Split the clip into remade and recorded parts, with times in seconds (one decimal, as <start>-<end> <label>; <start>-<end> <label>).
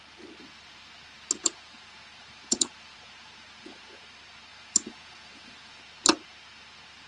0.0-1.4 recorded; 1.4-4.0 remade; 4.0-4.5 recorded; 4.5-5.8 remade; 5.8-7.1 recorded